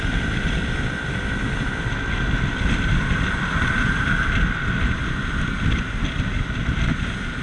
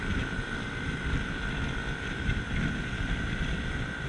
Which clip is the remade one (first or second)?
second